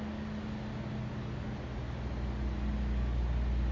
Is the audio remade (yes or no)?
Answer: no